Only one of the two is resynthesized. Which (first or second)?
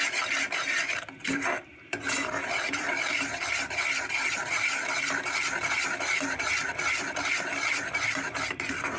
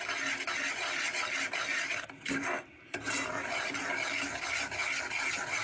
first